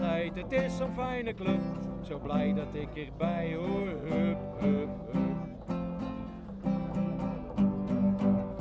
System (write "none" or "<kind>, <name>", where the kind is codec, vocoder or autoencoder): none